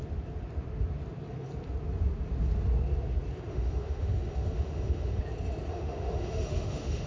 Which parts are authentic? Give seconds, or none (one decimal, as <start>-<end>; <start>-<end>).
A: 0.0-3.5; 5.2-5.7